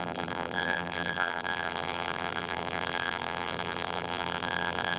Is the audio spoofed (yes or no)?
yes